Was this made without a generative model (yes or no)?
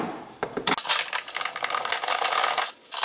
yes